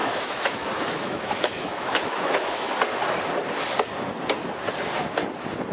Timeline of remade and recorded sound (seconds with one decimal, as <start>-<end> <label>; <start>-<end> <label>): 0.0-2.7 remade; 2.7-5.7 recorded